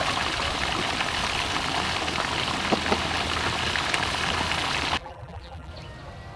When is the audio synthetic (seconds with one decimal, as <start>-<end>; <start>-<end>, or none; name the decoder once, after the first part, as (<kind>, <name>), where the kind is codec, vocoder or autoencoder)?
5.0-5.7 (vocoder, BigVGAN v2)